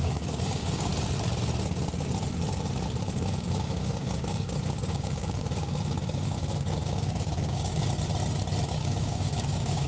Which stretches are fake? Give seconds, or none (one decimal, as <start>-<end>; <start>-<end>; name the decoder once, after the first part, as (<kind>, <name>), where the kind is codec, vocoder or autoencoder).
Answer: 0.0-0.9 (codec, DAC); 3.0-7.8; 8.7-9.9